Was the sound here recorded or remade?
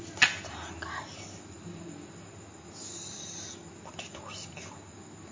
recorded